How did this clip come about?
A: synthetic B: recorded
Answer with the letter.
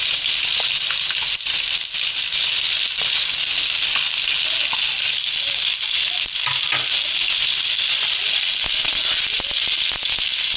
B